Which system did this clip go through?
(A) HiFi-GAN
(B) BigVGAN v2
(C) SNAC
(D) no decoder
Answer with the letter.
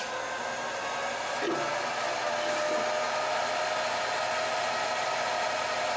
D